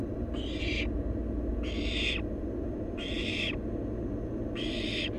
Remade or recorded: recorded